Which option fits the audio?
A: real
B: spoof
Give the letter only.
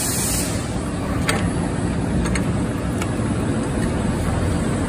B